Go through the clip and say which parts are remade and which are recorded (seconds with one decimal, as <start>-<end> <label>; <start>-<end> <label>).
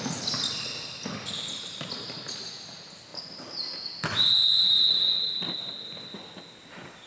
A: 0.0-7.1 recorded